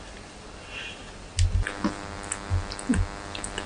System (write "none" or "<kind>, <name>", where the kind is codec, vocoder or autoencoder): none